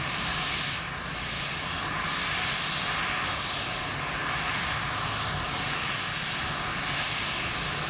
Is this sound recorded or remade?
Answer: recorded